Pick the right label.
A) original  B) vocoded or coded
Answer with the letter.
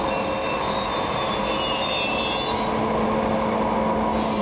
A